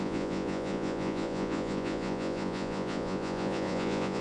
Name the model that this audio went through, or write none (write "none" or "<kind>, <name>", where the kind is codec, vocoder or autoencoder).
vocoder, Vocos